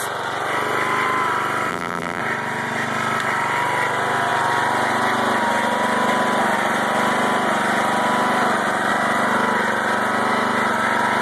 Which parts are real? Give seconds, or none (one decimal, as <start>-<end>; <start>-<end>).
0.0-1.7; 2.2-11.2